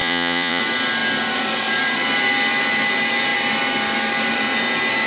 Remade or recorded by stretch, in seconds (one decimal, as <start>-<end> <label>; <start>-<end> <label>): 0.0-0.6 remade; 0.6-5.1 recorded